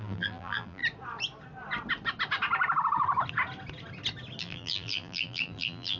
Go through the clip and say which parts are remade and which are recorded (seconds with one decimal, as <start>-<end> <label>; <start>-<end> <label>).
0.0-0.8 remade; 0.8-4.4 recorded; 4.4-6.0 remade